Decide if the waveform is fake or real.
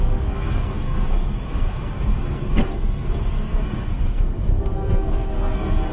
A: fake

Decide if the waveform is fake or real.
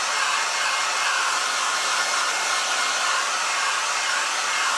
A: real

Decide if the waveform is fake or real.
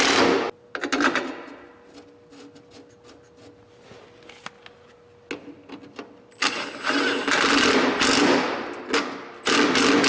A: real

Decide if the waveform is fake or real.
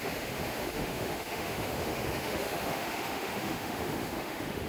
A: fake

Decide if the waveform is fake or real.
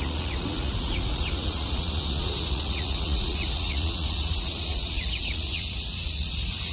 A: fake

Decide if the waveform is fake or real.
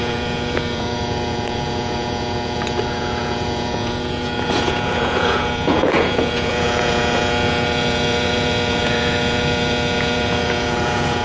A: fake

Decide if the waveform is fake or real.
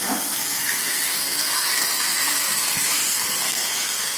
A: fake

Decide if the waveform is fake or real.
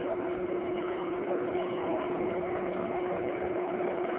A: fake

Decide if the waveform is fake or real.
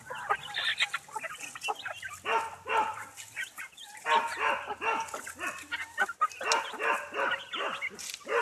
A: real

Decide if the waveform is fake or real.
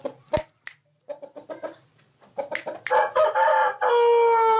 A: real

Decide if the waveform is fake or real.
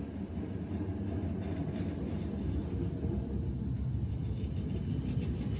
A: real